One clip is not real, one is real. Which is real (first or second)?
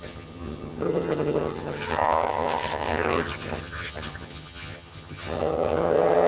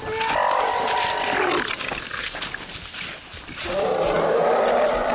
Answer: second